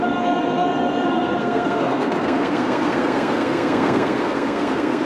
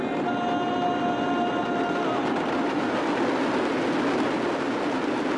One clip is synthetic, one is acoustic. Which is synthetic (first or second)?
first